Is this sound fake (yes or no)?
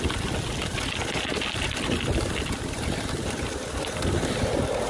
no